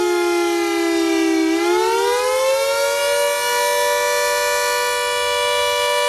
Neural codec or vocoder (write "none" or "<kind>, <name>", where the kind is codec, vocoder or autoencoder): none